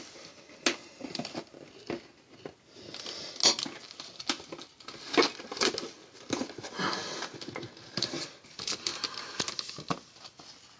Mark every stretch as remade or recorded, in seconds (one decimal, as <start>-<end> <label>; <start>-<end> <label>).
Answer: 0.0-10.8 recorded